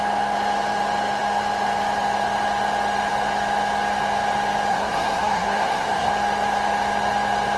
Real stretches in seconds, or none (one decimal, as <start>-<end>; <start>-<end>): 0.0-4.7; 6.1-7.6